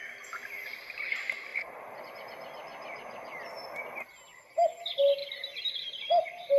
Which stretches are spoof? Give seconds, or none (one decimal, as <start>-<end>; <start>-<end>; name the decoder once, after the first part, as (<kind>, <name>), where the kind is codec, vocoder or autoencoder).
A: 1.5-2.0 (vocoder, BigVGAN v2); 5.2-6.6

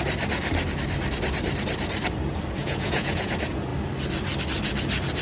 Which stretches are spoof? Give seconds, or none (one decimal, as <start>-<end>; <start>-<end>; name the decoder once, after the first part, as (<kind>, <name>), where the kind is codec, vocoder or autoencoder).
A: 2.6-3.3 (vocoder, Vocos)

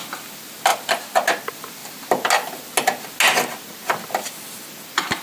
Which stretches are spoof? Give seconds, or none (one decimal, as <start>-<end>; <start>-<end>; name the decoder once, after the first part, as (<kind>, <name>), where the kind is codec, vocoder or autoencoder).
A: none

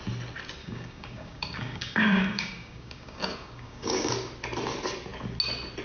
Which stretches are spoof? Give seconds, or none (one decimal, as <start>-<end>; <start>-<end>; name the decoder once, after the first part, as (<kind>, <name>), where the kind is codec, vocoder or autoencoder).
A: 0.6-4.1 (codec, DAC)